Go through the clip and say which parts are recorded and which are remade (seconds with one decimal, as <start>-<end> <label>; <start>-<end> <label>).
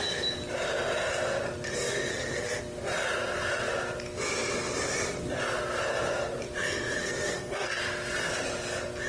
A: 0.0-2.1 recorded; 2.1-2.6 remade; 2.6-7.0 recorded; 7.0-7.8 remade; 7.8-9.1 recorded